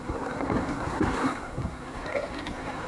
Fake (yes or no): yes